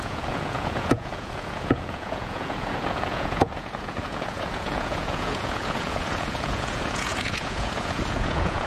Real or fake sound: fake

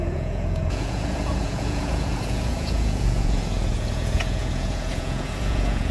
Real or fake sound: fake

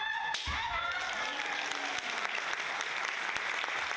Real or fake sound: real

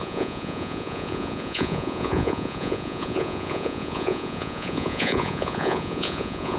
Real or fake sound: fake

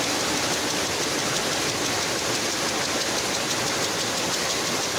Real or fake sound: real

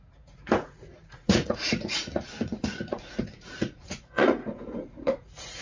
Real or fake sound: fake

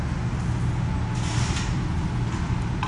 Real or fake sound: real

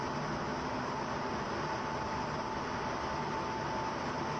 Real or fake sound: real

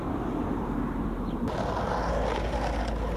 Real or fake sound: real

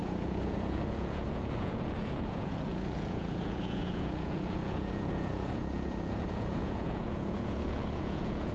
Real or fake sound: fake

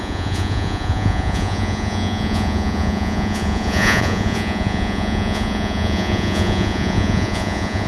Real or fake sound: fake